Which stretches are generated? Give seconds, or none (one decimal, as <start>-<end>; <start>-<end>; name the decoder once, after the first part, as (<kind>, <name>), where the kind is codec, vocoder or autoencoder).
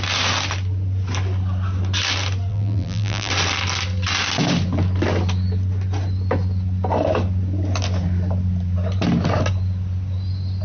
2.5-3.3 (vocoder, BigVGAN v2)